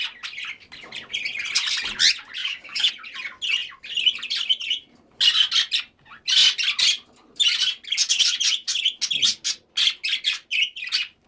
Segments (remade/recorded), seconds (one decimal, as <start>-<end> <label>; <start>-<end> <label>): 0.0-2.4 recorded; 2.4-2.9 remade; 2.9-11.3 recorded